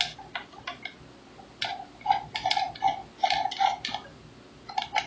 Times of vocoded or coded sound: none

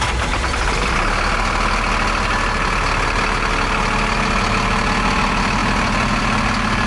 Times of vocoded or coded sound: none